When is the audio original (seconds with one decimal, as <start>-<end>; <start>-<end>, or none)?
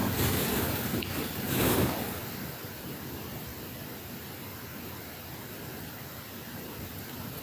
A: 2.2-7.4